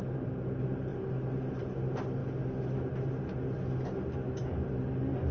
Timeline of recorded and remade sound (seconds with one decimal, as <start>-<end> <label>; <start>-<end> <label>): 0.0-5.3 recorded